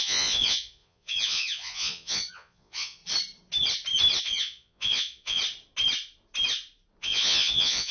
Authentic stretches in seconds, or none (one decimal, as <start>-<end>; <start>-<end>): 3.0-4.2; 5.4-7.0